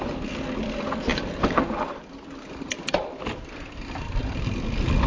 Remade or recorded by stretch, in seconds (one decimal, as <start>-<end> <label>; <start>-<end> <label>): 0.0-5.1 recorded